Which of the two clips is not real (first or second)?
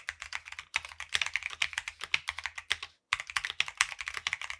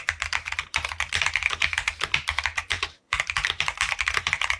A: second